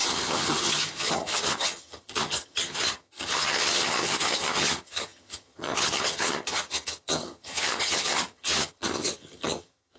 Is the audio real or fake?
fake